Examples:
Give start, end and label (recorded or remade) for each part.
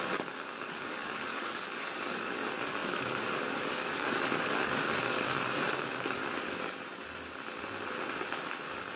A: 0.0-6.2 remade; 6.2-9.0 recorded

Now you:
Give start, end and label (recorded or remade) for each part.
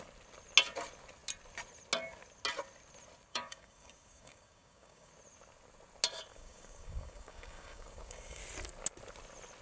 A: 0.0-3.3 recorded; 3.3-5.1 remade; 5.1-6.3 recorded; 6.3-8.4 remade; 8.4-9.6 recorded